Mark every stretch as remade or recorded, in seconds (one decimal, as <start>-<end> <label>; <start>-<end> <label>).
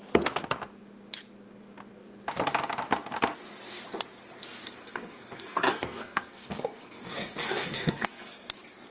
0.0-4.8 recorded; 4.8-8.5 remade; 8.5-8.9 recorded